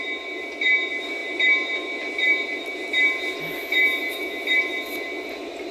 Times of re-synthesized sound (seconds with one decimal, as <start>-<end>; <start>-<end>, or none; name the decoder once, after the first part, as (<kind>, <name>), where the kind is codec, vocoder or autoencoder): none